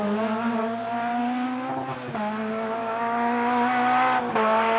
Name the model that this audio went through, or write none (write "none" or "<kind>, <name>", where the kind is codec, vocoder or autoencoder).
none